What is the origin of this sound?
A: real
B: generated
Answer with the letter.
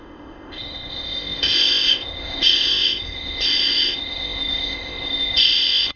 B